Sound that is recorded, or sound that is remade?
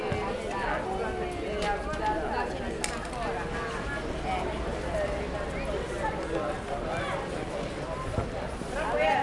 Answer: recorded